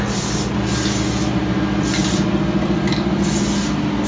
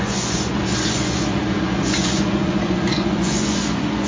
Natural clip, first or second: first